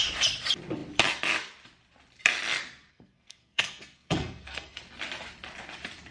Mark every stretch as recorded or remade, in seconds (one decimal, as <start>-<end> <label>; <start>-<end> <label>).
0.0-2.9 recorded; 2.9-4.8 remade; 4.8-6.1 recorded